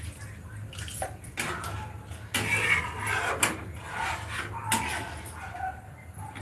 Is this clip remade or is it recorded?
recorded